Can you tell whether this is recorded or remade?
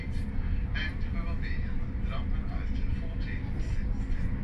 recorded